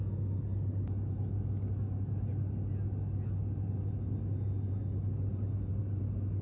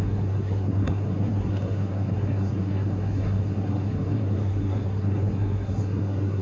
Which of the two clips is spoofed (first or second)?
second